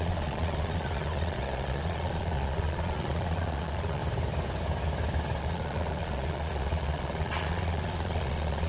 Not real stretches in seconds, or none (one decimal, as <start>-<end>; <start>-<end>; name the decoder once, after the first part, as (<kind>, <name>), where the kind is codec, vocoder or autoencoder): 0.0-4.0 (vocoder, Vocos); 5.4-8.7